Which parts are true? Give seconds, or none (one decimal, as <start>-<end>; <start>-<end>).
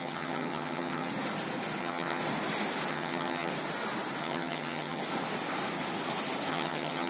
1.1-1.8; 2.2-2.9; 3.5-4.2; 5.0-6.5